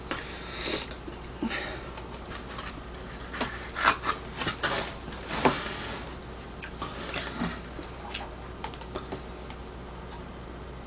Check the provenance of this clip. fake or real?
real